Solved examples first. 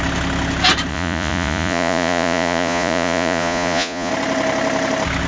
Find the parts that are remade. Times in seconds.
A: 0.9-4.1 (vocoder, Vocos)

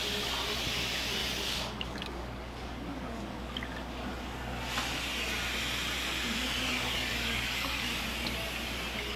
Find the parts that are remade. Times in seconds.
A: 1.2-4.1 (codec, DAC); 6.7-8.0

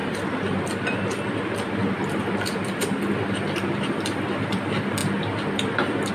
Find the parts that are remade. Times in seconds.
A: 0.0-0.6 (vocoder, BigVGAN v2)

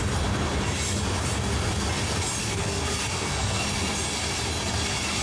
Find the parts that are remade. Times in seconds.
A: 2.4-3.6 (codec, SNAC)